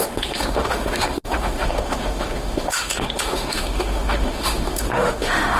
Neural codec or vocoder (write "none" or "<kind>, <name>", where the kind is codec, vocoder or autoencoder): autoencoder, DAC-VAE